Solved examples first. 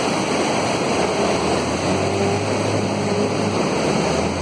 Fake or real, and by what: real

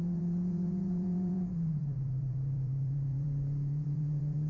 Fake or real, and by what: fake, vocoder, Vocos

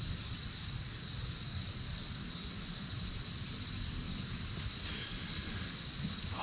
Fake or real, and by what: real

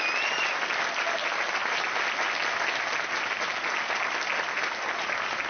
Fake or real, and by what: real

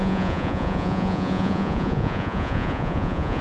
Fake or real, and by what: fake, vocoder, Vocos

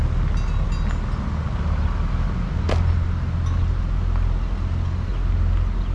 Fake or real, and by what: real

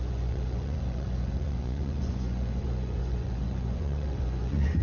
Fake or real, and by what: fake, vocoder, Vocos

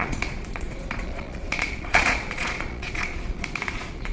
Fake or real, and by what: fake, vocoder, Vocos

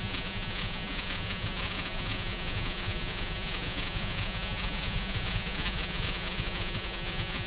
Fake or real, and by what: fake, vocoder, Vocos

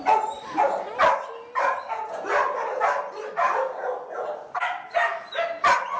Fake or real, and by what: real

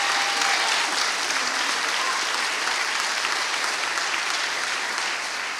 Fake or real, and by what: real